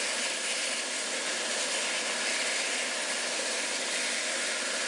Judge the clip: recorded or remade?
recorded